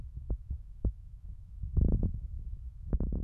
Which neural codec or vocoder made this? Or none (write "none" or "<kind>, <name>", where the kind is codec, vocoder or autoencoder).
autoencoder, DAC-VAE